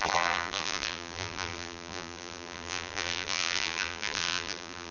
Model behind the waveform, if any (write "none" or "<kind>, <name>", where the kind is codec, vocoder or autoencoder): vocoder, BigVGAN v2